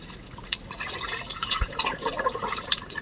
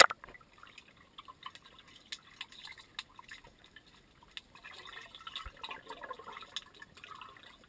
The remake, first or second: first